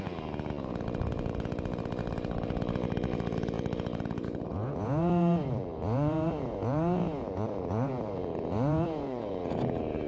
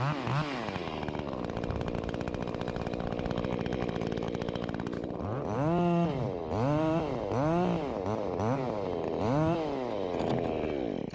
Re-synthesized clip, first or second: first